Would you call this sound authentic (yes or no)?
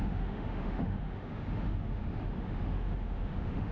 no